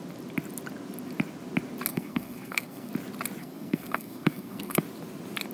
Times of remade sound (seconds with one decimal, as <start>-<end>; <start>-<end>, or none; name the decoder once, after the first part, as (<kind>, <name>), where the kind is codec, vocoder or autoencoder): 1.9-2.9 (codec, SNAC); 3.4-4.8